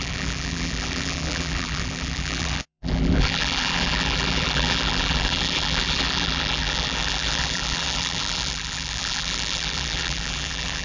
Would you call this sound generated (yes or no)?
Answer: yes